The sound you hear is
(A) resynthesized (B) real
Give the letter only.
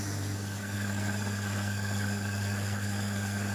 A